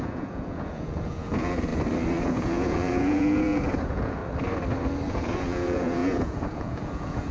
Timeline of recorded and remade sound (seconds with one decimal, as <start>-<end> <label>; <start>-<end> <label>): 0.0-1.7 remade; 1.7-2.2 recorded; 2.2-4.2 remade; 4.2-5.1 recorded; 5.1-7.3 remade